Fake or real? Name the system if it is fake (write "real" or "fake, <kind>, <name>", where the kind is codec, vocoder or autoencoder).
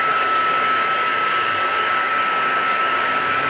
fake, codec, DAC